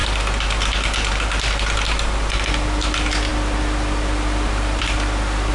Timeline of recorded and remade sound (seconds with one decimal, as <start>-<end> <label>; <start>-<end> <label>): 0.0-5.5 recorded